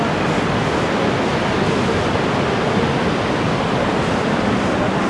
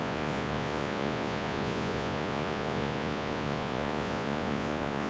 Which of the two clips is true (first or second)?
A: first